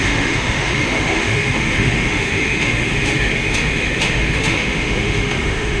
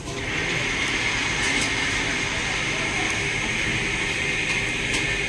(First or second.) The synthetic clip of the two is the first